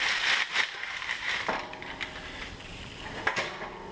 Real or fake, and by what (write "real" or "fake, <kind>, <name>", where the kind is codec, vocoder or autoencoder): real